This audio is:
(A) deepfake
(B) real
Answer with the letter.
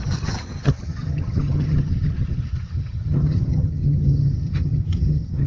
A